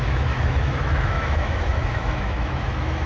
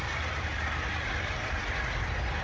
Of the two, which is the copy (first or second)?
first